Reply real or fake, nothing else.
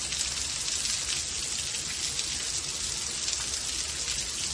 real